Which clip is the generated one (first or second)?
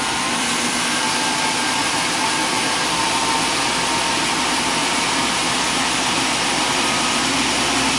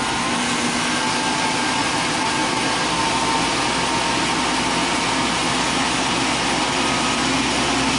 first